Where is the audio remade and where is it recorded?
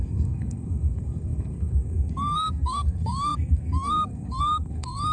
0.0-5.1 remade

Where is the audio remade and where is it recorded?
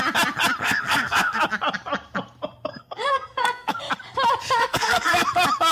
0.0-0.6 recorded; 0.6-1.4 remade; 1.4-2.7 recorded; 2.7-3.8 remade; 3.8-4.6 recorded; 4.6-5.3 remade; 5.3-5.7 recorded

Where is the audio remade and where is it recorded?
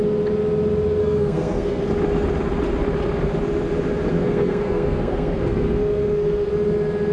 0.0-1.0 recorded; 1.0-1.8 remade; 1.8-4.1 recorded; 4.1-6.5 remade; 6.5-7.1 recorded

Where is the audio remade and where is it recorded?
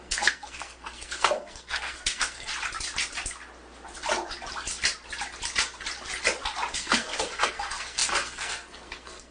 0.0-2.5 remade; 2.5-6.7 recorded; 6.7-9.3 remade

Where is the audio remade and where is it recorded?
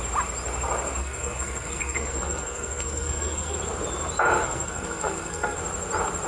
0.0-1.0 recorded; 1.0-3.6 remade; 3.6-4.4 recorded; 4.4-5.6 remade; 5.6-6.3 recorded